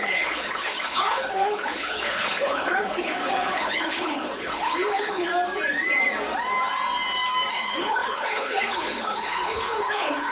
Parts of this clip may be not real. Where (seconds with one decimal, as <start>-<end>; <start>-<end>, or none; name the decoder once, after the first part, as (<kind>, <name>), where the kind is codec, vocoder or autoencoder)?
0.0-5.3 (codec, HILCodec); 7.5-10.3